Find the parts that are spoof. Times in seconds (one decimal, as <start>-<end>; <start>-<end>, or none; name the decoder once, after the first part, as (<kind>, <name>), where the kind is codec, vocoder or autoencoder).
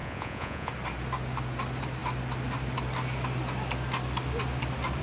0.0-0.7 (vocoder, Vocos)